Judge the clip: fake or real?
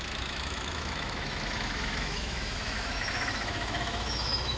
fake